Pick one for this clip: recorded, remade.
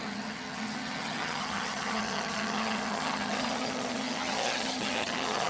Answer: remade